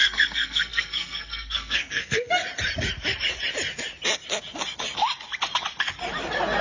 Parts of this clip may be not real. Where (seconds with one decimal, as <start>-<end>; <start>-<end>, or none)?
0.0-2.4